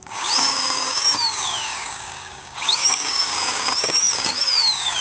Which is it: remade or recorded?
remade